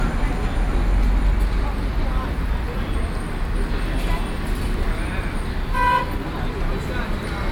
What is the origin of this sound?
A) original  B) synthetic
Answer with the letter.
A